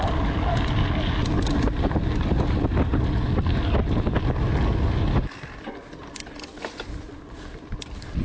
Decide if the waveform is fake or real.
real